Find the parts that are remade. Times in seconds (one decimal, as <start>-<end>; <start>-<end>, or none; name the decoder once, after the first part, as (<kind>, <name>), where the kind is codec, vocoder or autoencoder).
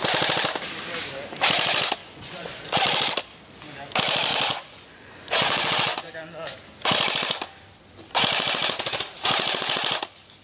2.0-3.1 (vocoder, Vocos); 4.3-6.1